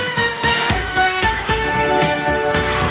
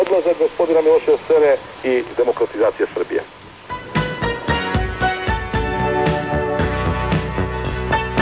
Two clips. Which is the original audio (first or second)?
second